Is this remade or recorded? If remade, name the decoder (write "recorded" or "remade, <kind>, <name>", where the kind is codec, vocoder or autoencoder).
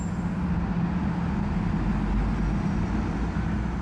recorded